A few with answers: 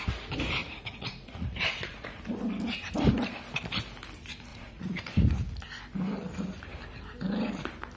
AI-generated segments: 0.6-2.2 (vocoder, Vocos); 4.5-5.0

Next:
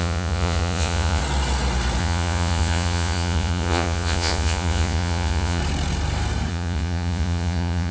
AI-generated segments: 0.0-1.2 (vocoder, Vocos); 2.0-5.6; 6.5-7.9

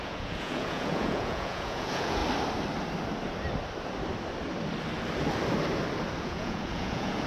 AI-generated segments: 0.0-2.2 (vocoder, Vocos); 6.2-7.3

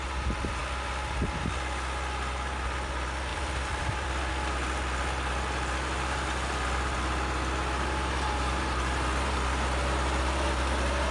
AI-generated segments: 3.3-4.3 (vocoder, BigVGAN v2)

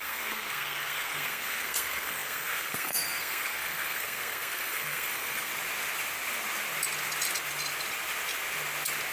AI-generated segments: 0.0-5.5 (codec, SNAC)

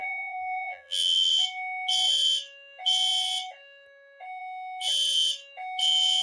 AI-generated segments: 0.0-1.3 (vocoder, BigVGAN v2)

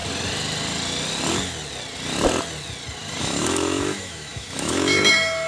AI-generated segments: 3.2-5.5 (autoencoder, DAC-VAE)

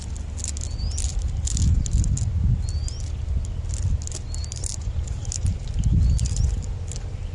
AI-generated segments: 1.1-1.6 (vocoder, BigVGAN v2); 4.4-5.8